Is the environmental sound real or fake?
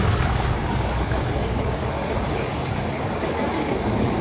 fake